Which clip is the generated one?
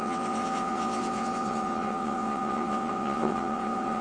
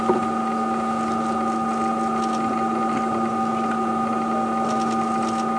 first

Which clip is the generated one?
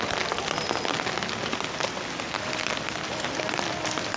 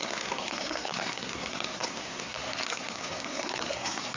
second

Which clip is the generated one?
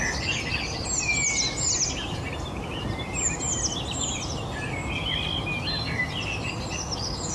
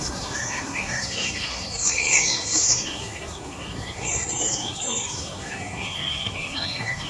second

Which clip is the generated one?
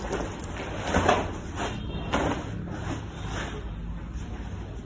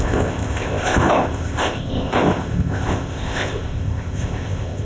second